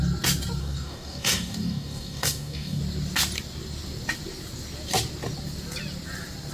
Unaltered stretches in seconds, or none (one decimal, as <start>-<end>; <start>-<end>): 0.0-0.6; 2.8-6.5